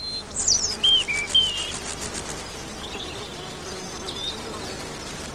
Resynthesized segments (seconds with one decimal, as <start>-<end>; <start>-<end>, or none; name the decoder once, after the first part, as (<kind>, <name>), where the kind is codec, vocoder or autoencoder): none